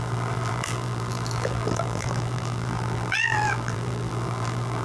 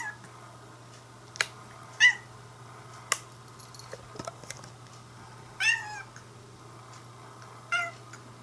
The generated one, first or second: first